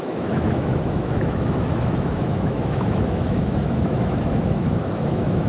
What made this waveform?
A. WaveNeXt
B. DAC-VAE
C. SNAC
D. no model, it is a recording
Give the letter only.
B